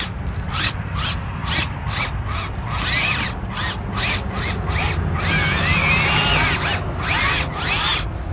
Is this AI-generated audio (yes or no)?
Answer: no